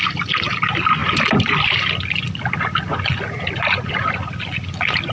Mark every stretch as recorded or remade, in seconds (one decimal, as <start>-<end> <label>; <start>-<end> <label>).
0.0-5.1 recorded